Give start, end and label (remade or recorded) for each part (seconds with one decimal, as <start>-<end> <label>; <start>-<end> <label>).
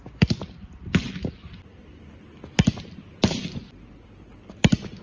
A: 0.0-5.0 recorded